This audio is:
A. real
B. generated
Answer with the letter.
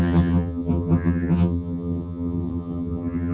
B